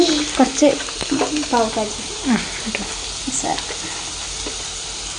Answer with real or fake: real